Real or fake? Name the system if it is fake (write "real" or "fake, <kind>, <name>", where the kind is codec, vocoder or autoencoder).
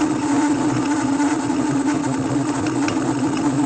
fake, vocoder, Vocos